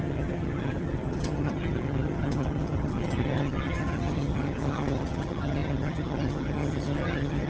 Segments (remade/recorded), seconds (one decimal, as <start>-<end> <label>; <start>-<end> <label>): 0.0-7.5 remade